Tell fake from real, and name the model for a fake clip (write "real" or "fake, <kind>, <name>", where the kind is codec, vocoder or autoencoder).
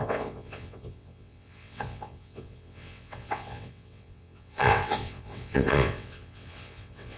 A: fake, vocoder, WaveNeXt